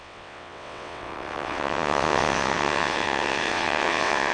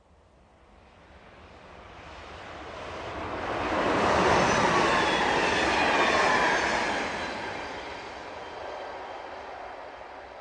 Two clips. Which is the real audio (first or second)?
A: second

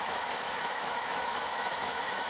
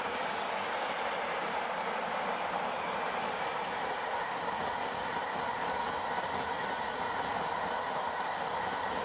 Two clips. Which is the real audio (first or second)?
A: second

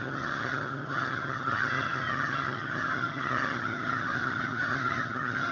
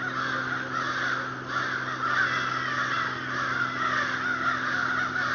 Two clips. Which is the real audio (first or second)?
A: second